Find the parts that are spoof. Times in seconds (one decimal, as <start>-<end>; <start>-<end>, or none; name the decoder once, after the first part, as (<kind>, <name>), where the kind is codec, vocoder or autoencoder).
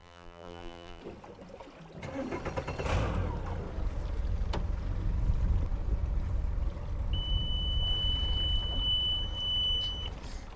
0.0-1.0 (vocoder, BigVGAN v2)